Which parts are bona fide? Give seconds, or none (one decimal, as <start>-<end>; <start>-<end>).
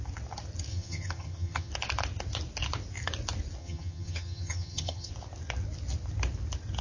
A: 0.0-0.7; 1.7-3.6; 5.1-6.8